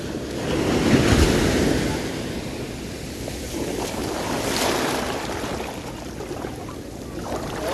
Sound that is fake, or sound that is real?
real